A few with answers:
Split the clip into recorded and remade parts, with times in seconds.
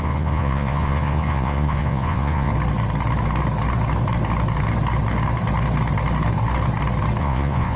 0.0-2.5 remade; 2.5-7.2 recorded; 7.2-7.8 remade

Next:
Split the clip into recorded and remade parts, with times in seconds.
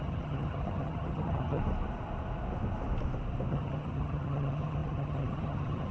0.0-1.6 remade; 1.6-3.5 recorded; 3.5-5.9 remade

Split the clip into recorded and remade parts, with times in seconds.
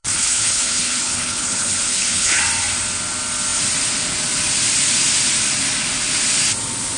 0.0-2.4 remade; 2.4-7.0 recorded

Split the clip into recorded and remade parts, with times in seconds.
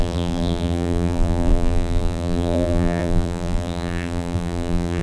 0.0-5.0 remade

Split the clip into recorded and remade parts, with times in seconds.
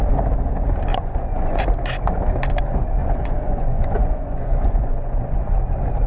0.0-0.9 recorded; 0.9-1.6 remade; 1.6-3.0 recorded; 3.0-5.4 remade; 5.4-6.1 recorded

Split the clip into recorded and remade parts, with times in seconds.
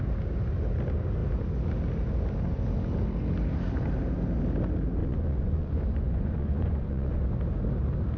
0.0-5.0 recorded; 5.0-7.2 remade; 7.2-8.2 recorded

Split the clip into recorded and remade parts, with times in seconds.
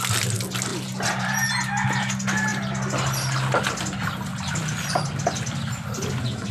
0.0-0.7 recorded; 0.7-1.5 remade; 1.5-4.3 recorded; 4.3-6.1 remade; 6.1-6.5 recorded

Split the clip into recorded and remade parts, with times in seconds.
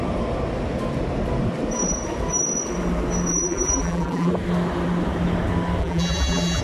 0.0-3.3 recorded; 3.3-4.3 remade; 4.3-5.8 recorded; 5.8-6.6 remade